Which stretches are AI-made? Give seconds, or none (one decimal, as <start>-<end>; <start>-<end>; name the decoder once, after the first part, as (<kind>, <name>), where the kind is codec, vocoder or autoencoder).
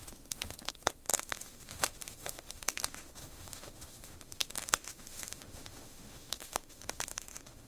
0.0-7.7 (autoencoder, DAC-VAE)